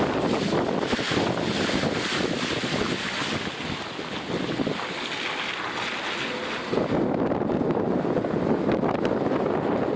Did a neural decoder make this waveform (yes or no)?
no